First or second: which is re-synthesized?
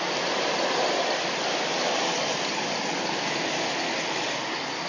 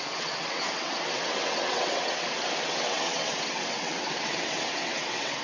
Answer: second